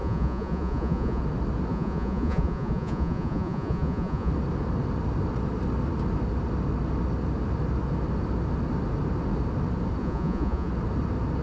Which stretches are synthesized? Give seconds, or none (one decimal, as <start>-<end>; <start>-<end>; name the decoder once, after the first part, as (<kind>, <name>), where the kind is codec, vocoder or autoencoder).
0.0-1.2 (vocoder, Vocos); 1.7-4.3; 10.0-10.7

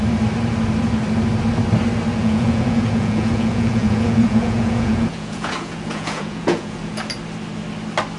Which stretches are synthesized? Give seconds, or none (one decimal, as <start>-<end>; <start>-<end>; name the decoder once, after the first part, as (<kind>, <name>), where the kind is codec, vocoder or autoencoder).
2.2-7.0 (vocoder, Vocos)

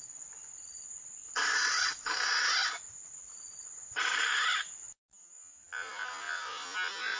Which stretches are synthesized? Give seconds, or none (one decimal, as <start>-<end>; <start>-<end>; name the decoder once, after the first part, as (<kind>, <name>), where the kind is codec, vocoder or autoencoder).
1.2-2.1 (vocoder, Vocos)

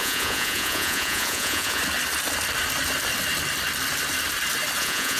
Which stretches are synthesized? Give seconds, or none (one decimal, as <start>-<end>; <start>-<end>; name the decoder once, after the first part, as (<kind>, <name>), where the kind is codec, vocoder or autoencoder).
0.0-1.8 (vocoder, Vocos); 4.8-5.2